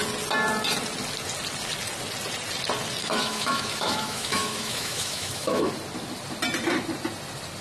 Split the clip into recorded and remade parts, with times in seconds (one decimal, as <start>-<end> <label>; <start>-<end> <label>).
0.0-3.0 recorded; 3.0-5.7 remade; 5.7-7.6 recorded